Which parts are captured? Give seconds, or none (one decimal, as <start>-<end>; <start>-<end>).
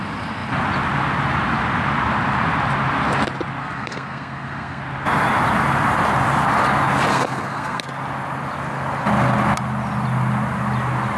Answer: 0.0-3.6; 4.8-7.1; 7.8-11.2